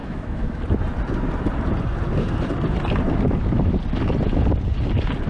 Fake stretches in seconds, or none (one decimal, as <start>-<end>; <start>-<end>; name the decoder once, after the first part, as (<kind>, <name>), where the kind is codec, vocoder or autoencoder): 0.0-0.6 (autoencoder, DAC-VAE)